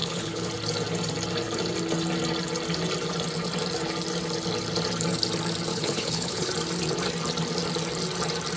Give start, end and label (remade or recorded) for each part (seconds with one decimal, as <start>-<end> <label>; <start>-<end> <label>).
0.0-0.5 remade; 0.5-5.7 recorded; 5.7-6.5 remade; 6.5-8.6 recorded